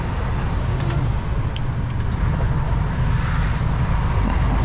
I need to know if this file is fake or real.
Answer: real